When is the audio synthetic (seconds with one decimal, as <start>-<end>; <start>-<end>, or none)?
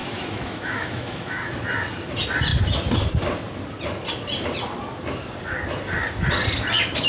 0.0-1.5